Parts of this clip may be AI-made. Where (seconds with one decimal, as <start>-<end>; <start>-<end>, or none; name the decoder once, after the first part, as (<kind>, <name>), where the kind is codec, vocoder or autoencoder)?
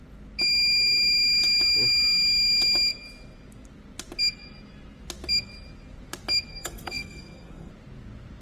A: 6.5-7.7 (codec, SNAC)